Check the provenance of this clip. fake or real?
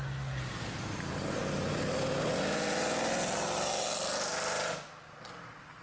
real